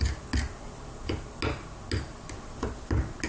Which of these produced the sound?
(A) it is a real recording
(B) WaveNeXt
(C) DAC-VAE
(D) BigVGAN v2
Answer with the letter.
A